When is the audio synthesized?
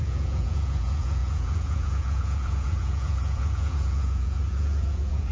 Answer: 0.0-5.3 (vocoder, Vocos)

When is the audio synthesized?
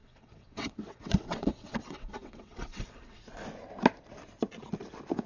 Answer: 0.0-3.2 (vocoder, WaveNeXt)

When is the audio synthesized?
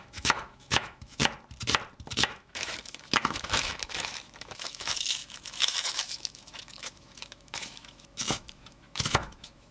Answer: 0.0-1.2 (autoencoder, DAC-VAE); 2.1-9.7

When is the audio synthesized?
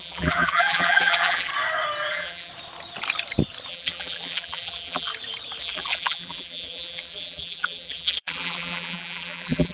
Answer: 0.0-1.5 (vocoder, BigVGAN v2); 2.1-2.5; 3.7-5.1; 5.6-9.7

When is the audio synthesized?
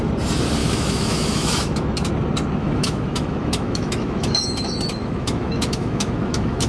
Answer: 0.6-2.1 (autoencoder, DAC-VAE); 2.6-6.7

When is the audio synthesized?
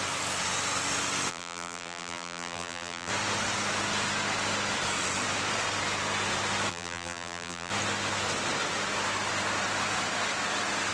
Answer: 1.3-3.1 (vocoder, BigVGAN v2); 6.7-7.7